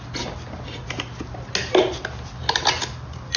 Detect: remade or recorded recorded